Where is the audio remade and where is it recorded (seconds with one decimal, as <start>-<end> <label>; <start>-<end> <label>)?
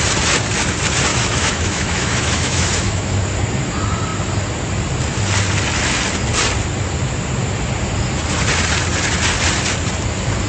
0.0-1.1 recorded; 1.1-3.1 remade; 3.1-10.5 recorded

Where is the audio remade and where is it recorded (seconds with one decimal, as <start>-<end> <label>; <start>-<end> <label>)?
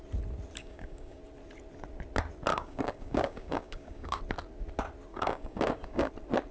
0.0-0.6 recorded; 0.6-1.2 remade; 1.2-2.5 recorded; 2.5-4.2 remade; 4.2-5.1 recorded; 5.1-6.1 remade; 6.1-6.5 recorded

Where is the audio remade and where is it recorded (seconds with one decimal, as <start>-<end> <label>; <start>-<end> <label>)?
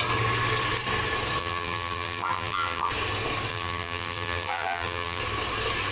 0.0-1.4 recorded; 1.4-2.9 remade; 2.9-3.5 recorded; 3.5-5.2 remade; 5.2-5.9 recorded